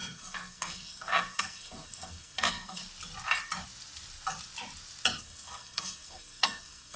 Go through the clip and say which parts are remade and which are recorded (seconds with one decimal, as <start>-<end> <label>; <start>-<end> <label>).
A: 0.0-2.8 remade; 2.8-5.2 recorded; 5.2-7.0 remade